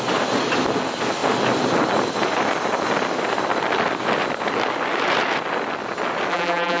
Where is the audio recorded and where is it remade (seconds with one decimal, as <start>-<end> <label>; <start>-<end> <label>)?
0.0-6.3 recorded; 6.3-6.8 remade